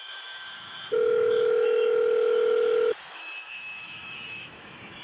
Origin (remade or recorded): remade